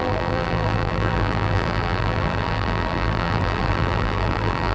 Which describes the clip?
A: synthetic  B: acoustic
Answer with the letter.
A